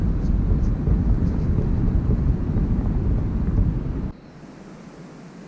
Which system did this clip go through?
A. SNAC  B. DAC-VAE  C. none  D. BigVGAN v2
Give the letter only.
C